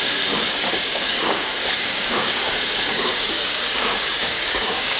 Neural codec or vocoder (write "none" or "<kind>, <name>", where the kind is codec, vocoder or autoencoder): codec, DAC